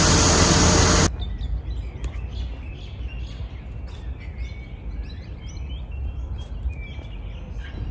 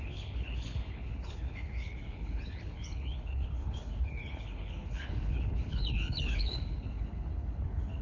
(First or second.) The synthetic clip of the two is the second